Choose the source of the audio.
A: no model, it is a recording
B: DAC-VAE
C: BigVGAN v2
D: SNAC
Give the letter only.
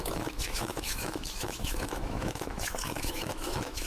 B